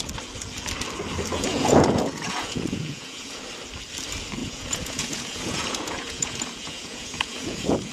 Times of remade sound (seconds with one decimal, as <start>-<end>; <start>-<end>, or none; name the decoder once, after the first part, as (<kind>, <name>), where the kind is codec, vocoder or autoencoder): 1.3-3.4 (vocoder, Vocos); 4.4-7.9